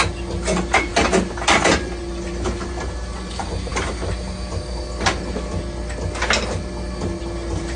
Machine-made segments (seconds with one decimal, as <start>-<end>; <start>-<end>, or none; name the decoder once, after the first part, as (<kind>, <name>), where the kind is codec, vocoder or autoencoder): none